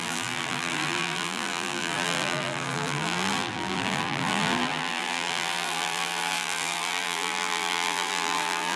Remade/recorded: remade